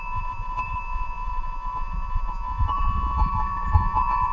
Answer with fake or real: fake